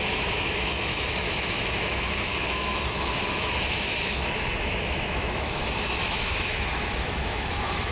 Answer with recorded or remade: remade